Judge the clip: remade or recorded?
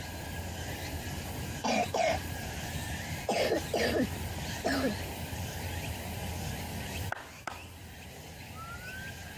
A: recorded